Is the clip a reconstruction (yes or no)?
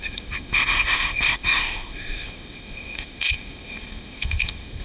yes